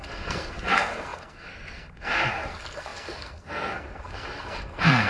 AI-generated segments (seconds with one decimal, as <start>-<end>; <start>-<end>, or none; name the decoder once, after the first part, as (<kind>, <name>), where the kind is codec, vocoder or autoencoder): 0.0-5.1 (codec, SNAC)